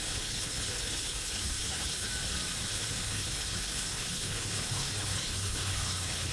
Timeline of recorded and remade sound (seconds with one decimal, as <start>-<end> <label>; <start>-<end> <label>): 0.0-2.1 remade; 2.1-2.7 recorded; 2.7-6.3 remade